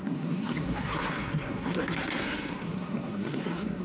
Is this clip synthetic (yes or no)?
yes